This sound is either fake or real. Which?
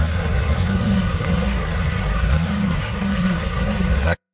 fake